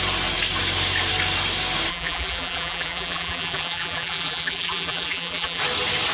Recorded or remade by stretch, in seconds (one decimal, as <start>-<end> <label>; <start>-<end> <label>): 0.0-1.9 recorded; 1.9-5.6 remade; 5.6-6.1 recorded